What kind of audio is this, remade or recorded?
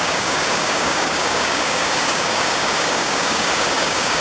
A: remade